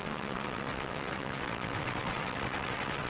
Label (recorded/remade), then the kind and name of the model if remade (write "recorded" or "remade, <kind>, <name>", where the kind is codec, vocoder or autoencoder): remade, vocoder, WaveNeXt